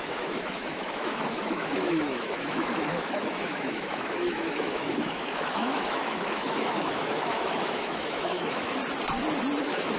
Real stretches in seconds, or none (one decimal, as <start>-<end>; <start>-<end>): 8.8-9.6